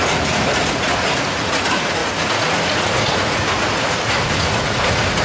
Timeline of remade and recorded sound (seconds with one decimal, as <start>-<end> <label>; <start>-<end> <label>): 0.0-5.2 remade